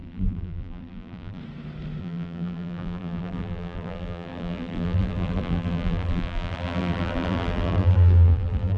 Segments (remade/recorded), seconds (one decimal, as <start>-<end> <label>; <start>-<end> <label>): 0.0-1.4 remade; 1.4-2.0 recorded; 2.0-8.8 remade